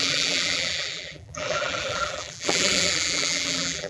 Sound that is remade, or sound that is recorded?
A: remade